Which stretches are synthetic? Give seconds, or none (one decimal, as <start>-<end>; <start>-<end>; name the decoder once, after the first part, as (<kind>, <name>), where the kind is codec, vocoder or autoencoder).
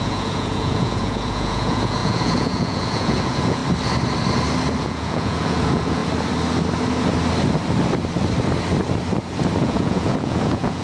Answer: 0.0-3.6 (vocoder, Vocos); 4.8-6.0; 9.6-10.8